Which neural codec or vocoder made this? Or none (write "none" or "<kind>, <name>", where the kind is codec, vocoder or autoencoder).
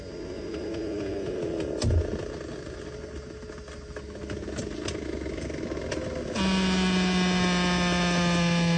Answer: none